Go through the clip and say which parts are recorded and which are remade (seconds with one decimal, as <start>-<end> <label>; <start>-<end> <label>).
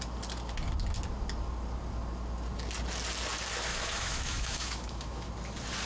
0.0-3.7 recorded; 3.7-5.3 remade; 5.3-5.9 recorded